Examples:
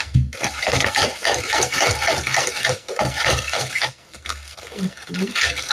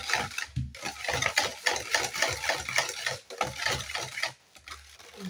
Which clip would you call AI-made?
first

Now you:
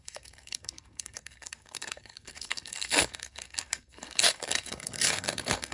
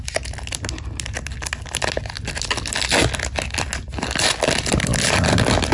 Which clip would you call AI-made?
first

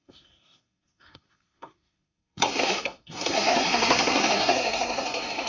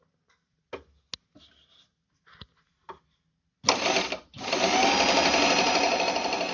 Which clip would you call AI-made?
first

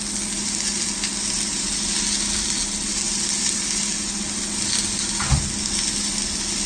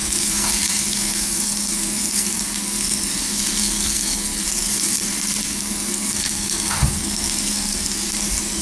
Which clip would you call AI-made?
second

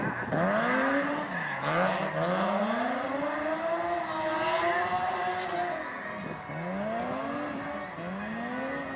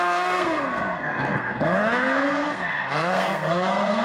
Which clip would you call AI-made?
second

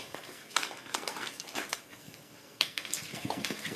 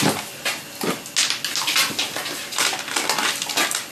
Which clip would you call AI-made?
first